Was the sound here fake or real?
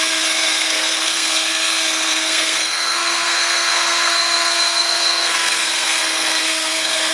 fake